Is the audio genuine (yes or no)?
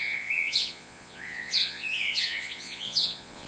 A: no